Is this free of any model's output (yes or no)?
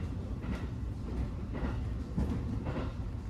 no